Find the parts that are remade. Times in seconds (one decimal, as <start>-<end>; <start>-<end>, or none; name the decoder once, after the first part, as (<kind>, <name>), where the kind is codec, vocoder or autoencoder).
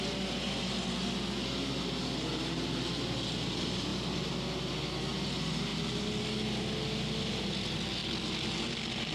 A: none